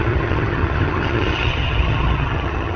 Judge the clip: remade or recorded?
remade